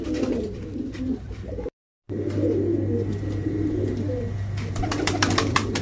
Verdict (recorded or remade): remade